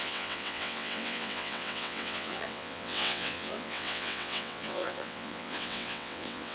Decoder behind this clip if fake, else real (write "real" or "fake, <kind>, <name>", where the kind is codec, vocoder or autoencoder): fake, vocoder, WaveNeXt